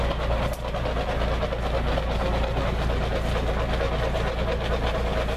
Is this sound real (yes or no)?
yes